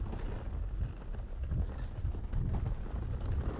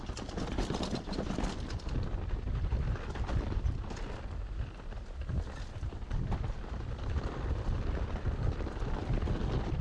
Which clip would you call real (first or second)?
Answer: first